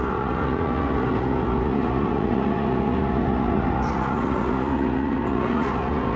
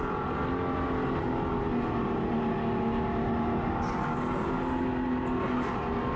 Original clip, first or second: second